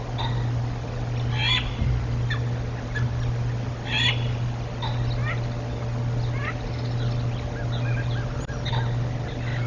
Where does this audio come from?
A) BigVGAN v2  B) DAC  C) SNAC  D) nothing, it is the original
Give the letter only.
D